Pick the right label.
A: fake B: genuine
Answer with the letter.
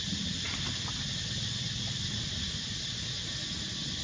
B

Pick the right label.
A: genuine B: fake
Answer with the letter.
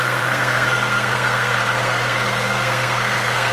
B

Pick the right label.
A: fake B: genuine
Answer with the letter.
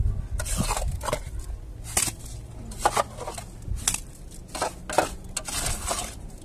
B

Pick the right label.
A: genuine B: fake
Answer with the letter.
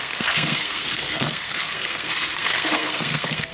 B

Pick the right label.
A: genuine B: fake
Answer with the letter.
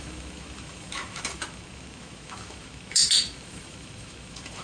B